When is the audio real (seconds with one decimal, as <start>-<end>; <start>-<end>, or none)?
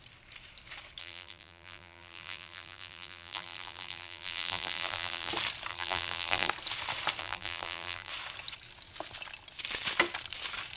0.0-1.0; 5.3-5.7; 6.5-7.2; 8.1-10.8